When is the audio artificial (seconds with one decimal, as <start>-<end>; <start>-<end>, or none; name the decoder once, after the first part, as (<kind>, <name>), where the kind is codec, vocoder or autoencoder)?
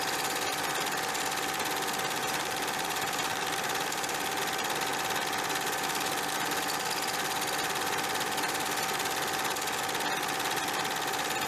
2.2-4.4 (vocoder, BigVGAN v2)